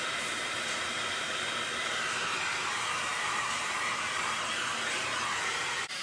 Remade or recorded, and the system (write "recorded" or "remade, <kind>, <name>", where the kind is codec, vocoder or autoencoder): remade, vocoder, BigVGAN v2